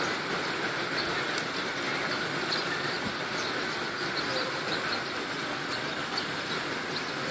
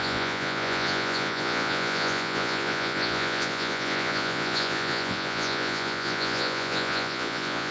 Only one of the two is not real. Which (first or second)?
second